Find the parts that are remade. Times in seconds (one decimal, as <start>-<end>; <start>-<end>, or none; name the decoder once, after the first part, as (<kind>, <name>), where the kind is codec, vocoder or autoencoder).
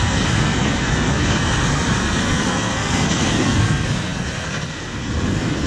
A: 0.0-5.7 (codec, SNAC)